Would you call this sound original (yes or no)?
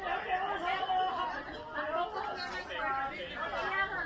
yes